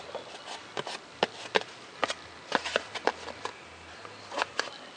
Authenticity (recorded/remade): recorded